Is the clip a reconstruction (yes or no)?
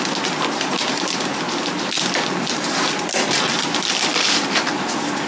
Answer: no